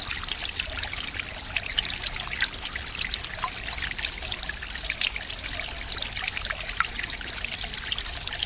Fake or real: real